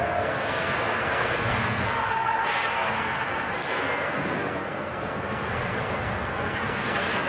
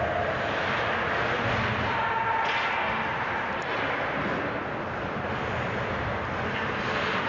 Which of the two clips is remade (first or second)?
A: first